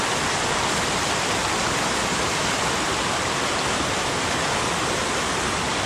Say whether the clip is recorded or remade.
recorded